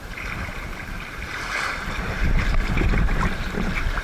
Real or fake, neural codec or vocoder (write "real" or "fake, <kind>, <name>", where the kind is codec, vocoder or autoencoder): fake, vocoder, BigVGAN v2